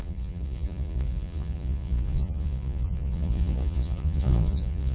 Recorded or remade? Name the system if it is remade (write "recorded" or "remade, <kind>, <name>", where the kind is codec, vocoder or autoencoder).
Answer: remade, vocoder, Vocos